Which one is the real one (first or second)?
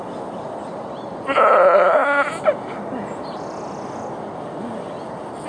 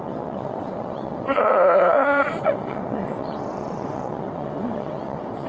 first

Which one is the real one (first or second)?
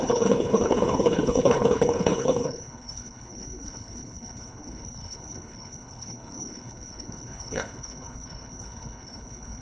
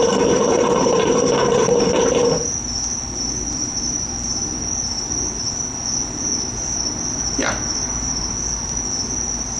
second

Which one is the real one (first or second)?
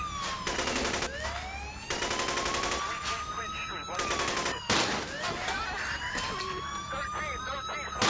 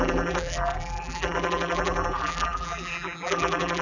first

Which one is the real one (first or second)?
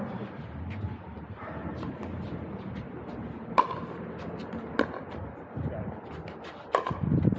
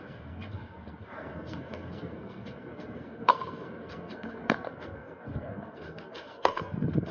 first